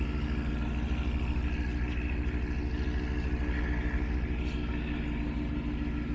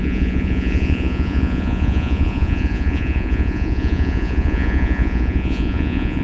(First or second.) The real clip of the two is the first